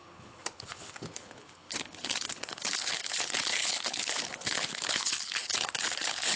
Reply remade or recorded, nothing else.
remade